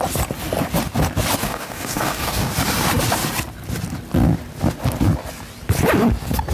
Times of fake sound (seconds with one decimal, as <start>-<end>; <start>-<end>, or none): 1.4-2.5